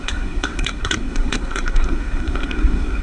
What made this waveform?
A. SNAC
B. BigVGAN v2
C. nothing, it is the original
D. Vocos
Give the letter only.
A